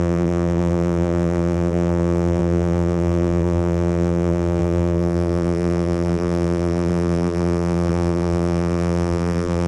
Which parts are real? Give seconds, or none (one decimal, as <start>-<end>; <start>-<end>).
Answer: none

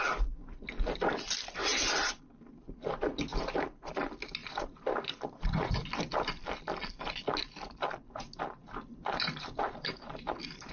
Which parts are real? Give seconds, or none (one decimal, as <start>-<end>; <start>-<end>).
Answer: 0.0-3.3; 3.9-4.4; 5.7-8.9

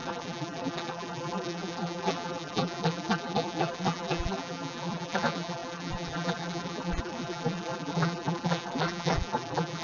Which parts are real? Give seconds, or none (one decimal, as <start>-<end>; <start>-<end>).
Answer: none

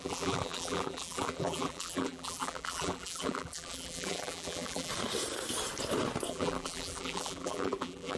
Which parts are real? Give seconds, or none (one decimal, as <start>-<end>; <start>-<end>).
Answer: 4.9-6.3

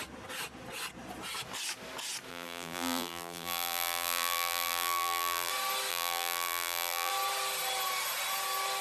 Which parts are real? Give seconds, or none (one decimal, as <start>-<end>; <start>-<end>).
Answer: 0.0-2.3; 5.5-5.9; 7.1-8.8